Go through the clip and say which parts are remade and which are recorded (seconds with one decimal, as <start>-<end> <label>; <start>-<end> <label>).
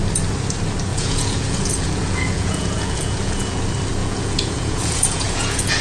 0.0-0.9 recorded; 0.9-3.6 remade; 3.6-4.0 recorded; 4.0-5.8 remade